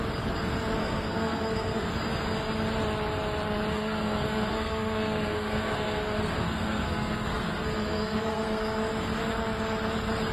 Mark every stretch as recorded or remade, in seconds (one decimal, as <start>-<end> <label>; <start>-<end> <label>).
0.0-0.8 recorded; 0.8-1.9 remade; 1.9-3.7 recorded; 3.7-8.9 remade; 8.9-10.3 recorded

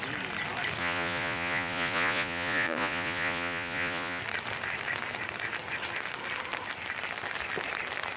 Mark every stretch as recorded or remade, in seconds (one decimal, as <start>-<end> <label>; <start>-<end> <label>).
0.0-0.8 recorded; 0.8-4.2 remade; 4.2-8.2 recorded

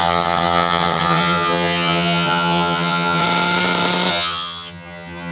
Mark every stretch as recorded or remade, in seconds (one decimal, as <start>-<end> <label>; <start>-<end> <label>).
0.0-3.2 remade; 3.2-4.1 recorded; 4.1-5.3 remade

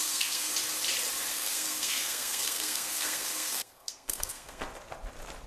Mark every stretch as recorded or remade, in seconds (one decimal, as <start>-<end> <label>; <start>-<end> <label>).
0.0-0.5 remade; 0.5-1.3 recorded; 1.3-4.6 remade; 4.6-5.5 recorded

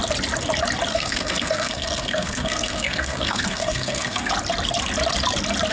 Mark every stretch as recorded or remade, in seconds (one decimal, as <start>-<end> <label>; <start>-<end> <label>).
0.0-0.9 recorded; 0.9-4.3 remade; 4.3-5.7 recorded

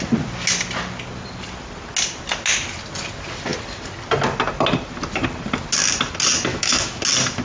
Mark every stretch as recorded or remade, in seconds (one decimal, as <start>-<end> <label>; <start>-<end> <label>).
0.0-6.5 recorded; 6.5-7.0 remade; 7.0-7.4 recorded

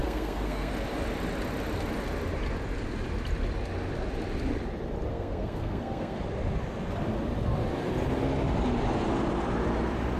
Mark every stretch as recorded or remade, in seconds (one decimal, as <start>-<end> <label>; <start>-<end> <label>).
0.0-0.7 remade; 0.7-5.1 recorded; 5.1-6.2 remade; 6.2-10.2 recorded

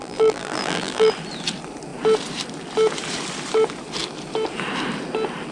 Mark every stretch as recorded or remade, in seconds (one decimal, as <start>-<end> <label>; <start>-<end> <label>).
0.0-1.1 remade; 1.1-5.5 recorded